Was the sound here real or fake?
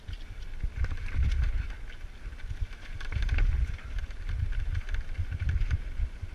real